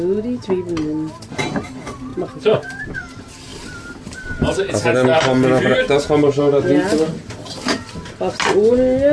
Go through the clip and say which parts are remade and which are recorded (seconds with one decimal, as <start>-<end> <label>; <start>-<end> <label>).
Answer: 0.0-9.1 recorded